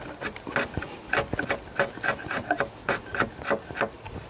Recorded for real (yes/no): yes